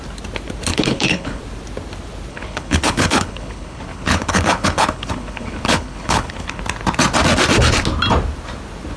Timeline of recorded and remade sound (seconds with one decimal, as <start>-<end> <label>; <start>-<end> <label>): 0.0-0.7 recorded; 0.7-1.4 remade; 1.4-2.3 recorded; 2.3-6.6 remade; 6.6-9.0 recorded